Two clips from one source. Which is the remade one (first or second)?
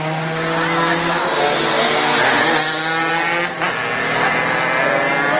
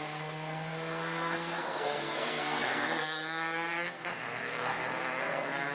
second